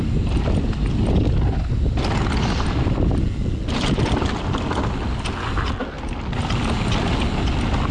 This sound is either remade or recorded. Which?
recorded